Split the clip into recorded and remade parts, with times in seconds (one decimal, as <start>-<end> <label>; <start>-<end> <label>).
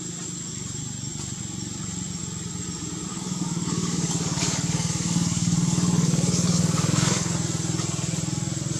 0.0-3.1 recorded; 3.1-7.3 remade; 7.3-8.8 recorded